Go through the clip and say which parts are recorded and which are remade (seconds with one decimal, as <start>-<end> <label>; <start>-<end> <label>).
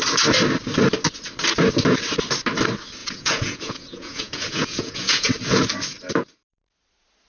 0.0-3.0 recorded; 3.0-5.3 remade; 5.3-7.3 recorded